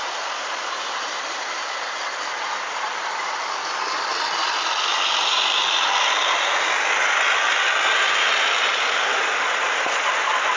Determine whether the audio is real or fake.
real